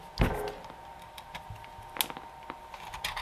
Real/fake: real